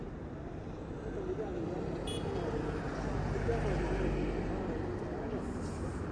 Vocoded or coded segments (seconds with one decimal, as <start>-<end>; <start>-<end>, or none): none